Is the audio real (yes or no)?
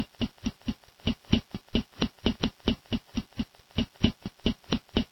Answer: yes